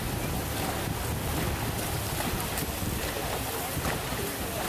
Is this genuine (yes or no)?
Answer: yes